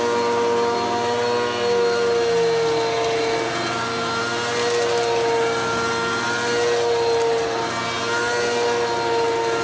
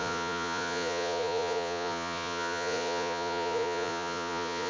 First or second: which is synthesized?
second